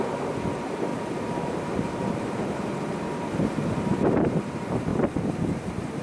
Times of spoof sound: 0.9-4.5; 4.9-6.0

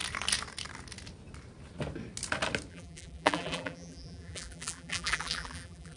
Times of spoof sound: 2.7-6.0

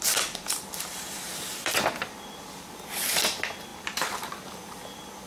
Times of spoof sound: 0.0-5.3

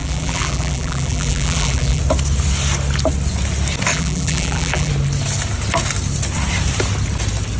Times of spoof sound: 0.0-2.0; 3.9-4.9

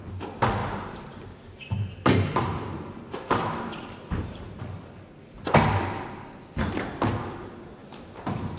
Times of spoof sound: 0.6-4.6; 7.8-8.6

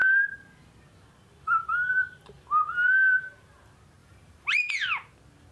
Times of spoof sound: 4.0-4.7

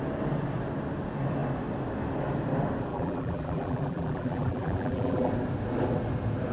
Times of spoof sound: 2.9-5.3